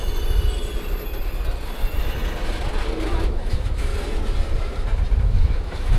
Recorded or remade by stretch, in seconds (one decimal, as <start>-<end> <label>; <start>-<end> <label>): 0.0-3.1 recorded; 3.1-3.9 remade; 3.9-5.2 recorded; 5.2-6.0 remade